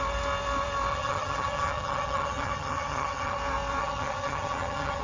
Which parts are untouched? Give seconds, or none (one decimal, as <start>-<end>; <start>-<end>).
0.0-0.9; 3.4-3.8